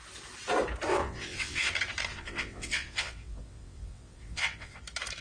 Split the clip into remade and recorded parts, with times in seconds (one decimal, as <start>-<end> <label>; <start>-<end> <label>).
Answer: 0.0-0.9 recorded; 0.9-1.7 remade; 1.7-2.1 recorded; 2.1-4.8 remade; 4.8-5.2 recorded